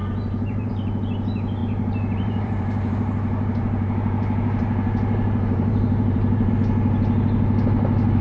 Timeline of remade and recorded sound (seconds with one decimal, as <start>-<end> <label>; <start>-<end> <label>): 0.0-0.7 remade; 0.7-1.6 recorded; 1.6-6.5 remade; 6.5-8.2 recorded